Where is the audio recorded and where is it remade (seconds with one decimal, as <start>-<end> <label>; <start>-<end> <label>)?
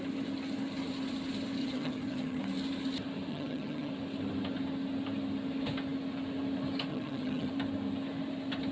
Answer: 0.0-1.6 recorded; 1.6-2.4 remade; 2.4-3.3 recorded; 3.3-3.9 remade; 3.9-6.9 recorded; 6.9-7.5 remade; 7.5-8.7 recorded